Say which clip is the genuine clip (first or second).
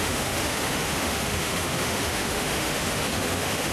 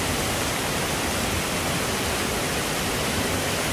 second